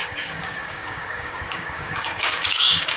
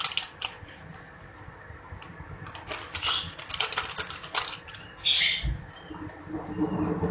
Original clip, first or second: second